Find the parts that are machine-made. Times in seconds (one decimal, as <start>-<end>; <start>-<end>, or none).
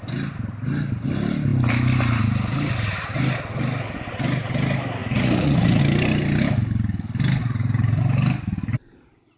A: 5.0-5.8; 7.4-8.0